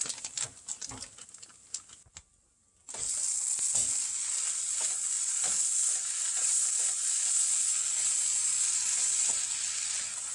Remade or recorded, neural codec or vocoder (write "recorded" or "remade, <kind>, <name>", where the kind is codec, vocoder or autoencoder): recorded